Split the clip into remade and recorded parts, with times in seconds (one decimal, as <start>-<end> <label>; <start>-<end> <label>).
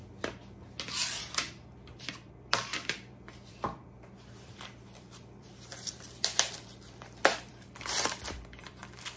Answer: 0.0-1.2 recorded; 1.2-9.2 remade